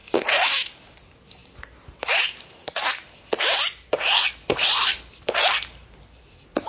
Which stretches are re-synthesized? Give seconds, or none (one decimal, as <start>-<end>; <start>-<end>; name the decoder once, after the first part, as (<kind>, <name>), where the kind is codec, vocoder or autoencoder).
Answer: none